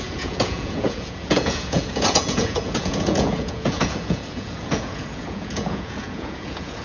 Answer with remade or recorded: remade